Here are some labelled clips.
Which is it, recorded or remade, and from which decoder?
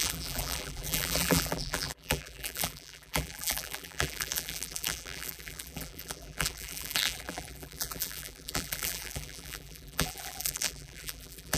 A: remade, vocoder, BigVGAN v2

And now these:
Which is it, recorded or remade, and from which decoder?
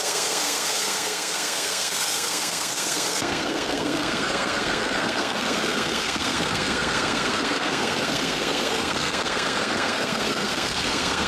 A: remade, codec, SNAC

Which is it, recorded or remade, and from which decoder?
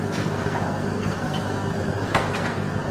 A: remade, codec, SNAC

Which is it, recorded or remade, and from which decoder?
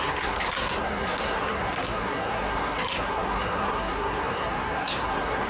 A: remade, codec, SNAC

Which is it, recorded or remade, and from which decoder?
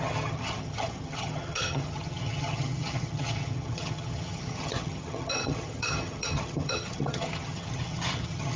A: remade, vocoder, HiFi-GAN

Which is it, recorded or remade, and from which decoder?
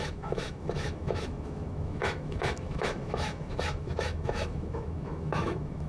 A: remade, autoencoder, DAC-VAE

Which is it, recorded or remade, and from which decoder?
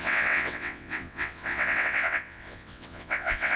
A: remade, vocoder, WaveNeXt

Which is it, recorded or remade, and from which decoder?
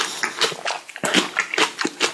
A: recorded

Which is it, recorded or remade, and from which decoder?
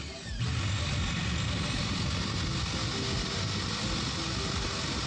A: recorded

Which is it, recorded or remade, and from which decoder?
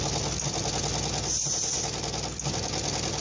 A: recorded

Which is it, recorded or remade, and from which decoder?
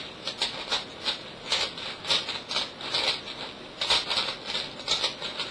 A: recorded